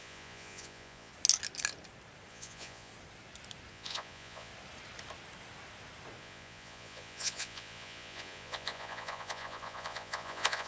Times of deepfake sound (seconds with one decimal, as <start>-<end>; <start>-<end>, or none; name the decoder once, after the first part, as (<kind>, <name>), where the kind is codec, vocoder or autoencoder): 0.0-1.1 (vocoder, Vocos); 2.3-2.9; 3.7-4.5; 6.2-10.7

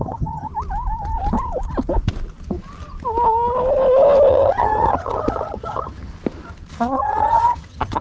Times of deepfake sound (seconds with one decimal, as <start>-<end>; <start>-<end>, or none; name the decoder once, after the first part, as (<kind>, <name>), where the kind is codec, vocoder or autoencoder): 0.0-0.5 (vocoder, HiFi-GAN); 4.3-6.1; 7.0-8.0

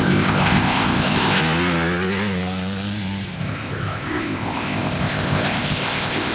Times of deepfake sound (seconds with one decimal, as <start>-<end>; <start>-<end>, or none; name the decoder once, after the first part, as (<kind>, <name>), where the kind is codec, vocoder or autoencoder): 0.0-1.4 (codec, ZipCodec); 3.4-6.3

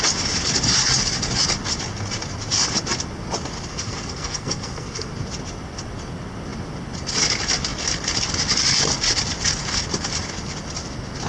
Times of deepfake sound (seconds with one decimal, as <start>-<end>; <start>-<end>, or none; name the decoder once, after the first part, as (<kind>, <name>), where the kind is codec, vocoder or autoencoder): 3.7-5.1 (codec, SNAC)

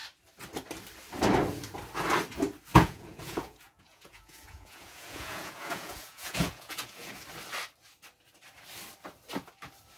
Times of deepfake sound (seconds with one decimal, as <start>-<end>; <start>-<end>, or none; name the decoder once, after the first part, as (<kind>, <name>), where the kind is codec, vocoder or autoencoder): 2.7-7.1 (vocoder, Vocos)